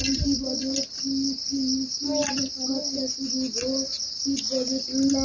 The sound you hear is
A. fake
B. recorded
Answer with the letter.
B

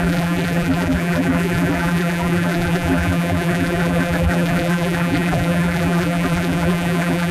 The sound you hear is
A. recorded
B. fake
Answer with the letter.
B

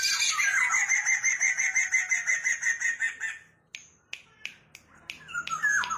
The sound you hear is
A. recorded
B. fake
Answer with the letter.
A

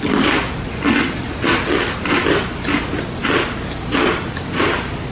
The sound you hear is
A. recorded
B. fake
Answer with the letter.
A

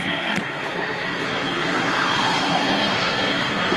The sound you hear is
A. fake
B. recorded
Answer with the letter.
A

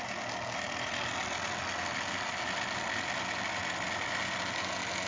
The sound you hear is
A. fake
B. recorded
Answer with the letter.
B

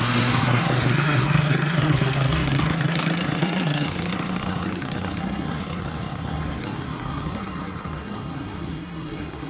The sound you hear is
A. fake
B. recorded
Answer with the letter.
A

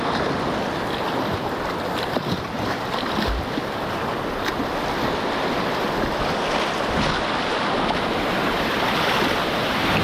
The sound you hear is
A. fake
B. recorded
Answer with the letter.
B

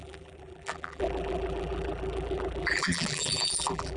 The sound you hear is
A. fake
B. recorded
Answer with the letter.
A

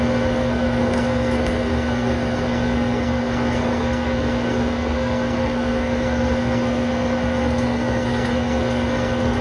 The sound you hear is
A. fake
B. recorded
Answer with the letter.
A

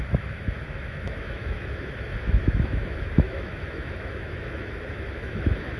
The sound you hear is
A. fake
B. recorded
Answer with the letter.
A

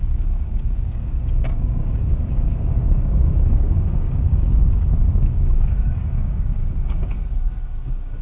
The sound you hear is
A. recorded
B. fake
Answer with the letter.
B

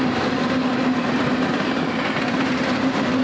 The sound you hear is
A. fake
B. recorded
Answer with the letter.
B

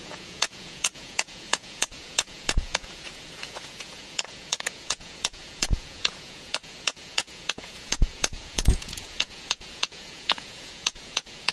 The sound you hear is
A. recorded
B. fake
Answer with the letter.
B